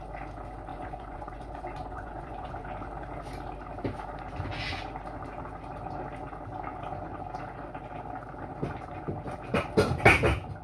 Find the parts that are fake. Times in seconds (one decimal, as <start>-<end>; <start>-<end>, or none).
0.7-2.6